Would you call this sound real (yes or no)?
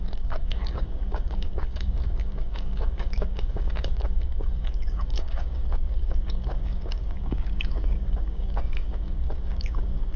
no